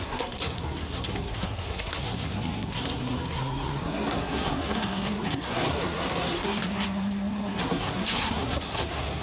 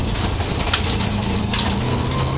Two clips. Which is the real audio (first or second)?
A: second